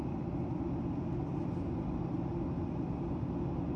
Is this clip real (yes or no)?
yes